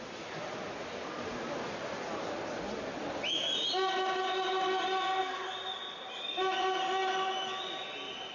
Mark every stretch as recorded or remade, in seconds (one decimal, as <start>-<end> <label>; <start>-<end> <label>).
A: 0.0-8.3 recorded